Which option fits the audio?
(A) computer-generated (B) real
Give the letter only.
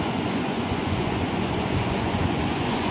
A